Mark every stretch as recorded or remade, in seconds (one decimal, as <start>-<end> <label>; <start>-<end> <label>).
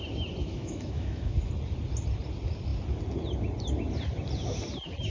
0.0-0.4 recorded; 0.4-1.5 remade; 1.5-5.1 recorded